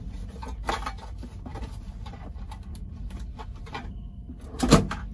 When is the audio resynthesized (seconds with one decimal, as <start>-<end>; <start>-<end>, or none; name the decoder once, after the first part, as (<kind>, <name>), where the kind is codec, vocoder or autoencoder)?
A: 1.5-3.1 (vocoder, BigVGAN v2); 3.6-4.3